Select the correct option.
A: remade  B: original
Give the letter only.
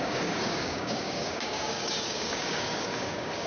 A